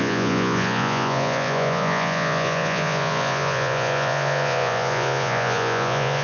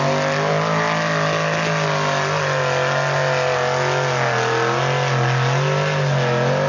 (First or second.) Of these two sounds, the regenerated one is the first